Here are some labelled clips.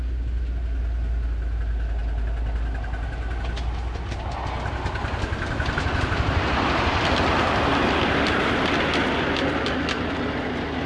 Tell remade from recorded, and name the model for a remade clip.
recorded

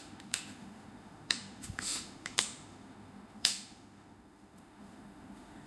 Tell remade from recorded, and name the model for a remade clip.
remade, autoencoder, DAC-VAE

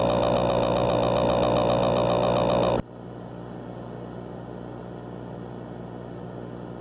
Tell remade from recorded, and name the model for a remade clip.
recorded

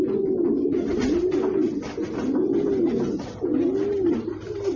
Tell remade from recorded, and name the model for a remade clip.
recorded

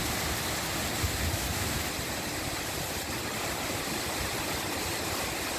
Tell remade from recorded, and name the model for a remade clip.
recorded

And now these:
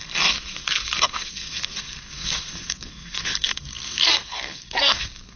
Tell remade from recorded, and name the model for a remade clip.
remade, codec, SNAC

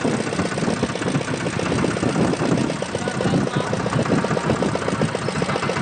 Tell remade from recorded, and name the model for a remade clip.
recorded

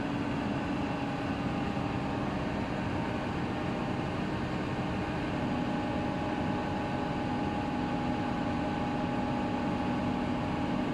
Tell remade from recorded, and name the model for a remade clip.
recorded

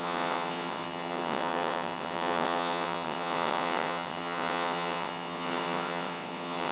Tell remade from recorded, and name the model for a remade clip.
remade, vocoder, WaveNeXt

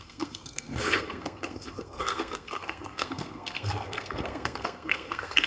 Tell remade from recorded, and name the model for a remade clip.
remade, codec, SNAC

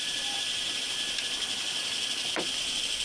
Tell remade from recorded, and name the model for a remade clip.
recorded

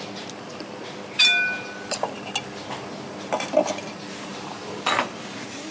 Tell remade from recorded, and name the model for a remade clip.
recorded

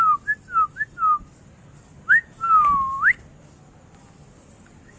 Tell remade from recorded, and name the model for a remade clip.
recorded